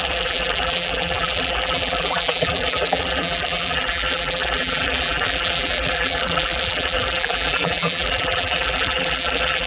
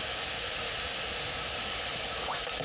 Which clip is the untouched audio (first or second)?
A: second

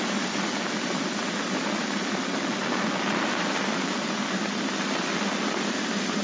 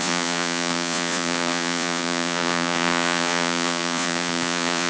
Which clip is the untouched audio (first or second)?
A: first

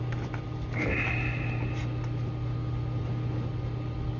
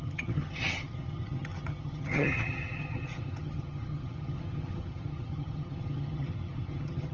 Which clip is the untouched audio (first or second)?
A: first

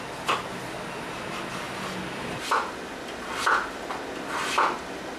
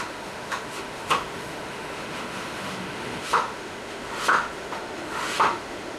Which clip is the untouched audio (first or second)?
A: first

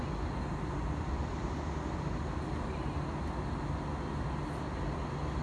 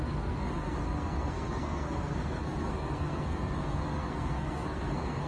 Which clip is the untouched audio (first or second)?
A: first